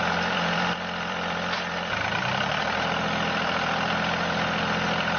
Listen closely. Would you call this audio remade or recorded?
remade